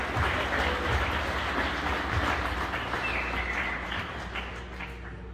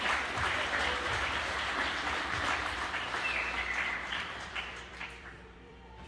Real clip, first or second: first